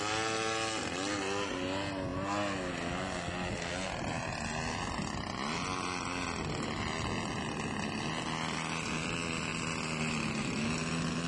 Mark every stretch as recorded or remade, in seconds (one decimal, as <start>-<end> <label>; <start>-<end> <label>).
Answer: 0.0-11.3 recorded